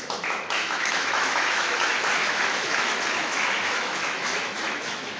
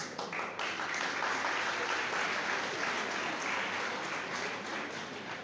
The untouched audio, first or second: second